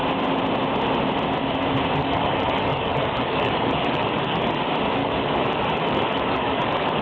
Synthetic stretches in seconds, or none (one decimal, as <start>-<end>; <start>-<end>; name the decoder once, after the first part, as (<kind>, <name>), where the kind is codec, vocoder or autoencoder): 2.0-4.6 (codec, DAC); 5.0-7.0